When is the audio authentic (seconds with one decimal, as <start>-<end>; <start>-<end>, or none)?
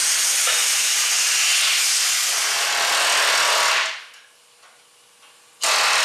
0.0-6.0